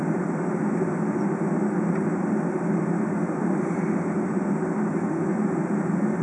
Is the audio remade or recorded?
recorded